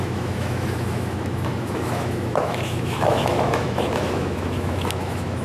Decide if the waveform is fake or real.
fake